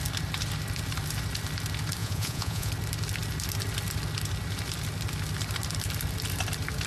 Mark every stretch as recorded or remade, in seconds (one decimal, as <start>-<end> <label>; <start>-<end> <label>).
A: 0.0-2.0 recorded; 2.0-2.7 remade; 2.7-6.9 recorded